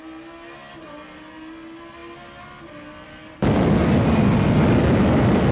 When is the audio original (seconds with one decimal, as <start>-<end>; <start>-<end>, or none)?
0.0-5.5